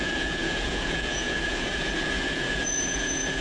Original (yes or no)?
no